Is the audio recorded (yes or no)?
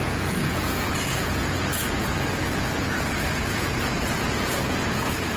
no